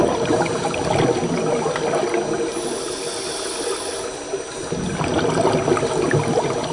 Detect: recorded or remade recorded